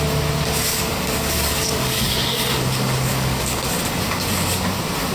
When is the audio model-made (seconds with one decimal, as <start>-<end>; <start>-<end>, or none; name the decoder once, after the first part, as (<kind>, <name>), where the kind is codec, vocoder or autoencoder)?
0.7-3.8 (codec, DAC)